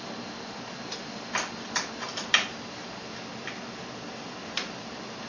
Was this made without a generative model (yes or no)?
yes